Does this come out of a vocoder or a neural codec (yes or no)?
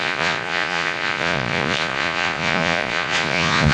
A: yes